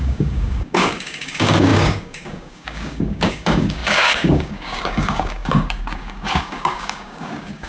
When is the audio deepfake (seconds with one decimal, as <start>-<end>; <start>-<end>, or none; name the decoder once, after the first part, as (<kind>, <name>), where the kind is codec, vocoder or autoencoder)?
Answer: 0.0-7.7 (codec, DAC)